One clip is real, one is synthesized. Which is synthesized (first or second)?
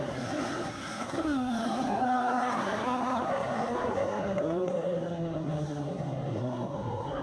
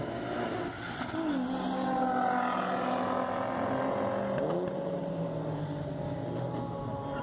first